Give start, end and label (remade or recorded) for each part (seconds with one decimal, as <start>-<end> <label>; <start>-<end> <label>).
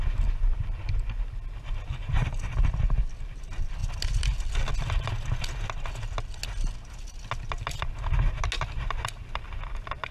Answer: 0.0-10.1 recorded